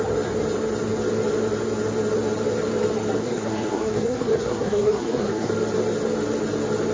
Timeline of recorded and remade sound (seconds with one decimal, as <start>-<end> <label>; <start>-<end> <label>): 0.0-3.2 recorded; 3.2-5.5 remade; 5.5-6.9 recorded